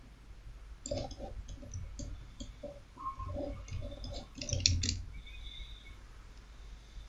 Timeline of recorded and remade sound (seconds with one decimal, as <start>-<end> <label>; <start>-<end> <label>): 0.0-7.1 recorded